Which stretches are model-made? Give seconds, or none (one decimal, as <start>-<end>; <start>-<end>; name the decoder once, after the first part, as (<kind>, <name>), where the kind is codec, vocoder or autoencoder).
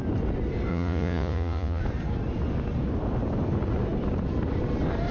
0.7-1.8 (vocoder, Vocos)